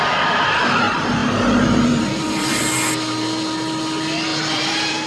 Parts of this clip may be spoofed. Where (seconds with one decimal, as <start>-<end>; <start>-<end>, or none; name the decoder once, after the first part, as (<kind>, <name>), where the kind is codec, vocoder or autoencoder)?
1.2-2.6 (vocoder, BigVGAN v2); 4.3-5.1